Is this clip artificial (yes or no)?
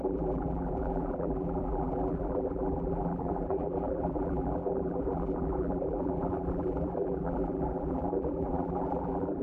yes